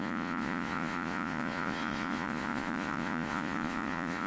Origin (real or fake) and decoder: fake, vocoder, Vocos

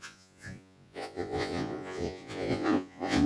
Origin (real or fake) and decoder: fake, vocoder, Vocos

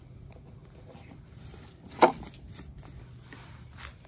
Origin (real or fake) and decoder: real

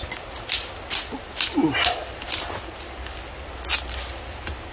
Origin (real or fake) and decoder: real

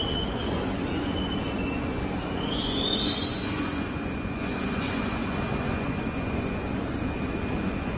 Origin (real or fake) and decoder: fake, vocoder, Vocos